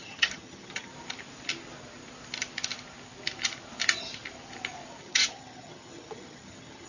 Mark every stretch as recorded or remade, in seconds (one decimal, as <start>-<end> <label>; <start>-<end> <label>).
0.0-0.9 remade; 0.9-5.0 recorded; 5.0-6.9 remade